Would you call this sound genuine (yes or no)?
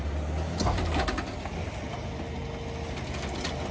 yes